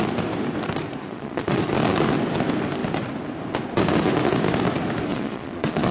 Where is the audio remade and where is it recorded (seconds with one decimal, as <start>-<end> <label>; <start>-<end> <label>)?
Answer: 0.0-1.0 recorded; 1.0-1.7 remade; 1.7-5.1 recorded; 5.1-5.9 remade